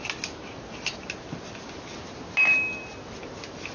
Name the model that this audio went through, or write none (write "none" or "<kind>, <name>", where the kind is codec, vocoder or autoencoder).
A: none